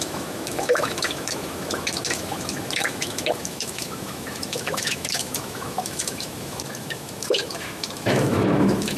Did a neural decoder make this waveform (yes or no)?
yes